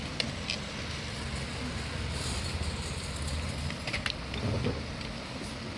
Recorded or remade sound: recorded